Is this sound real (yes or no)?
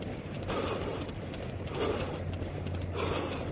yes